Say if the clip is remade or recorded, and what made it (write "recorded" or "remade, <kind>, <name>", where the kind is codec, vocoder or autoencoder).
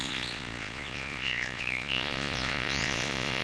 remade, vocoder, Vocos